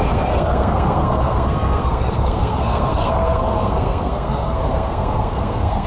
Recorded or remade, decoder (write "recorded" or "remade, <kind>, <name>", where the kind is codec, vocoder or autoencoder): remade, codec, SNAC